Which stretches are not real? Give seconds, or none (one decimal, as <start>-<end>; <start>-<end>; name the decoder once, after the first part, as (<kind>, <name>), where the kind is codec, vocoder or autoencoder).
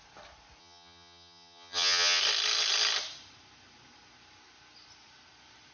0.6-2.2 (vocoder, HiFi-GAN)